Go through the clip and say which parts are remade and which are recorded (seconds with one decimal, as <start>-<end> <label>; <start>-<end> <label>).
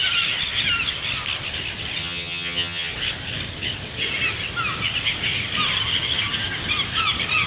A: 0.0-2.0 recorded; 2.0-2.9 remade; 2.9-7.5 recorded